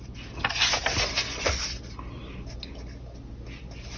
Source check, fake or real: real